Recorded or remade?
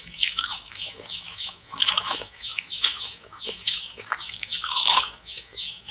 remade